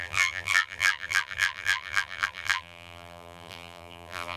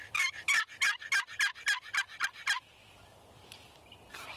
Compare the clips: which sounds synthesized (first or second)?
first